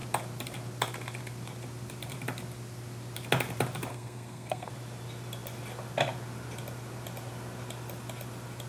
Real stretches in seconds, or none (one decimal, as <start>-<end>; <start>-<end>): 0.0-3.9; 4.7-8.7